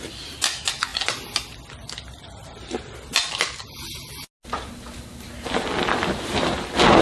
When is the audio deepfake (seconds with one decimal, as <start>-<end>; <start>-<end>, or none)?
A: none